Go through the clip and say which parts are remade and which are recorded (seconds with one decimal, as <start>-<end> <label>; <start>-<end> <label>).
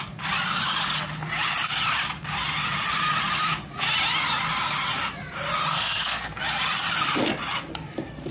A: 0.0-5.7 recorded; 5.7-6.4 remade; 6.4-8.3 recorded